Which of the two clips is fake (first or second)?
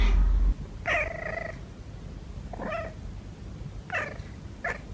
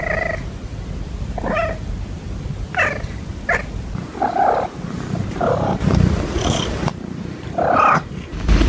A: second